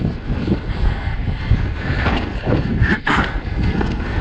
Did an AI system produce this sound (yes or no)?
yes